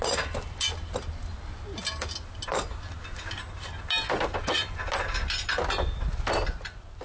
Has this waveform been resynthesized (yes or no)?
no